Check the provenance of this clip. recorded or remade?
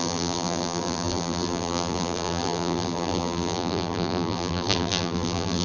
remade